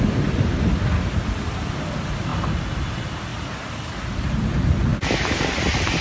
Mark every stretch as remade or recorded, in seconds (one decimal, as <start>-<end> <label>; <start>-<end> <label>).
0.0-6.0 recorded